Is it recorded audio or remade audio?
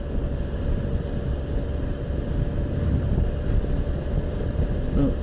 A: recorded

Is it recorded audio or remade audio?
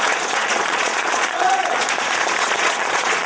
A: remade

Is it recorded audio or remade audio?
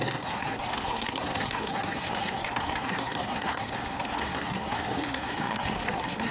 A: remade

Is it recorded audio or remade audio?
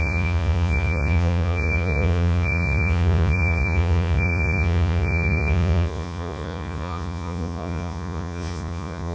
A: remade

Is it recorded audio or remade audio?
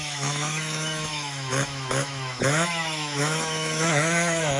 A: remade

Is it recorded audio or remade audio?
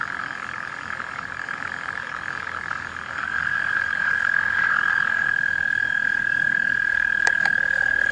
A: remade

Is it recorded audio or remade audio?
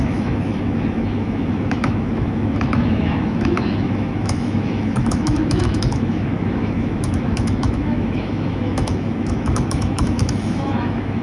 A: remade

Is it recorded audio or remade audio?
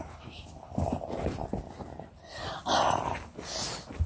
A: recorded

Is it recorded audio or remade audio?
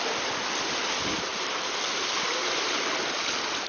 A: recorded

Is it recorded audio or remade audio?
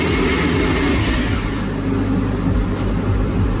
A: recorded